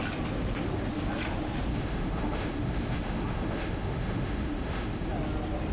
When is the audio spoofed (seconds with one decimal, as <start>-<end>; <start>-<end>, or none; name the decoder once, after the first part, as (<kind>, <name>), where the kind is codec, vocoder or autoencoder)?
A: 1.7-5.1 (autoencoder, DAC-VAE)